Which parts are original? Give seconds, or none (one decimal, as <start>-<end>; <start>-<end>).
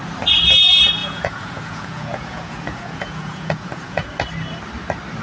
0.0-1.0; 4.1-5.2